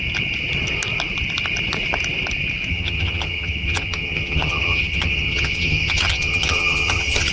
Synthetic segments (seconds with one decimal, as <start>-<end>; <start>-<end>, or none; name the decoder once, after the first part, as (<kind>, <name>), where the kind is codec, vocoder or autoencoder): 2.7-7.3 (vocoder, HiFi-GAN)